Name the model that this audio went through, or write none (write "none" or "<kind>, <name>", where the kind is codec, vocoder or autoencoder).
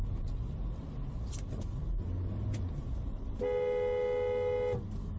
none